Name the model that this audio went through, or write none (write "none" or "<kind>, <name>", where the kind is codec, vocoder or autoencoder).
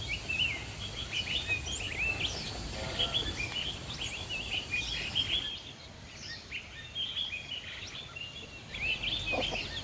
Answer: none